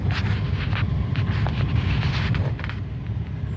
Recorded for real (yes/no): yes